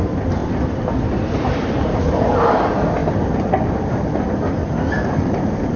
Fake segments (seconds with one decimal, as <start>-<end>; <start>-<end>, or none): 0.4-1.8; 3.0-5.8